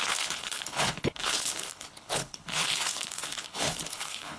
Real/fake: fake